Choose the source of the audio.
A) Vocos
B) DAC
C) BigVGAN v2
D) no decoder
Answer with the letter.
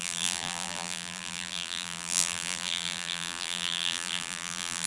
C